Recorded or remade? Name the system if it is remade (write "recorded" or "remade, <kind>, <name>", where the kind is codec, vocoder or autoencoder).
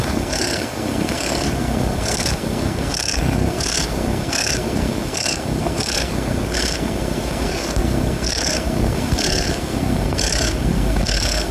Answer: remade, codec, SNAC